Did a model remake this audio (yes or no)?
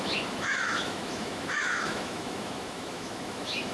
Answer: yes